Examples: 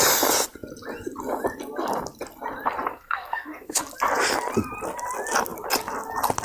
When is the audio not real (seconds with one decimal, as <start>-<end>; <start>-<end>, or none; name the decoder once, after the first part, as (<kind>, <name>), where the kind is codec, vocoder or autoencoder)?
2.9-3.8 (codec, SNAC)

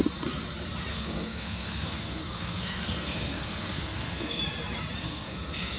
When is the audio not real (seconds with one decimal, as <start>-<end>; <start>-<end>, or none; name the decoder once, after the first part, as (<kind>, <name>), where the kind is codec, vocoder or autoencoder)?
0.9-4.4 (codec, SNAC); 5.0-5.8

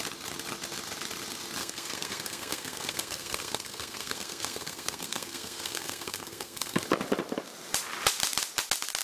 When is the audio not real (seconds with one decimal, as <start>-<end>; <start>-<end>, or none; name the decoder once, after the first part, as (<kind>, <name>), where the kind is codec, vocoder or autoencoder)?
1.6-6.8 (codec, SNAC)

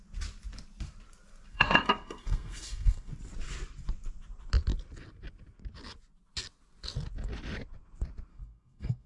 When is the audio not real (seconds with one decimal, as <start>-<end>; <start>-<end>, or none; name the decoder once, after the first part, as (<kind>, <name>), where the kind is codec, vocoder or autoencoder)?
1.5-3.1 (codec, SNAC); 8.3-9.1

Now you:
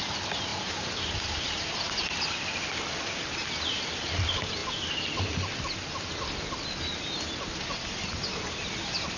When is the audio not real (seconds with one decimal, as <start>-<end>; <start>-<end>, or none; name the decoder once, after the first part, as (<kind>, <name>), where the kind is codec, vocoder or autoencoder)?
none

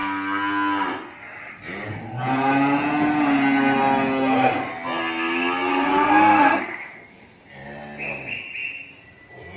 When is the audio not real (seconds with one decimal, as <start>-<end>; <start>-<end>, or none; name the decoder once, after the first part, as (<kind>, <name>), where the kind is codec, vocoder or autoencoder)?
5.7-7.4 (codec, SNAC)